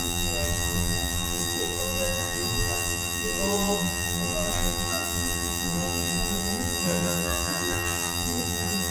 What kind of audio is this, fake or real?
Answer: fake